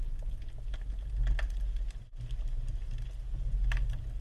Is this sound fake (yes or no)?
no